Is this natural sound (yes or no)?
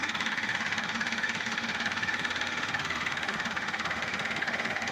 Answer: no